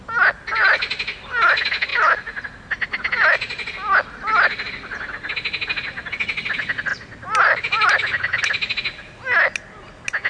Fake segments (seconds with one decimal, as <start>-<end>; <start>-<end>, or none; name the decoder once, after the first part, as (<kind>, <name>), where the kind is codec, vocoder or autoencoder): none